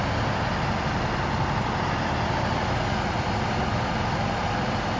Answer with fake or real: fake